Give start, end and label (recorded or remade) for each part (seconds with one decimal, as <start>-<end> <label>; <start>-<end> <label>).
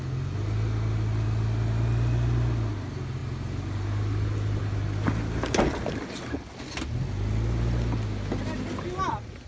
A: 0.0-9.5 recorded